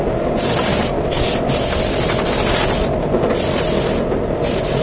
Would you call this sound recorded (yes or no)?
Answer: yes